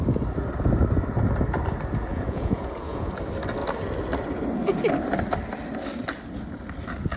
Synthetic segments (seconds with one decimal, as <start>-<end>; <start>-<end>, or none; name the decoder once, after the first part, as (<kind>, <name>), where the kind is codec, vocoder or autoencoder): 2.1-3.1 (vocoder, Vocos)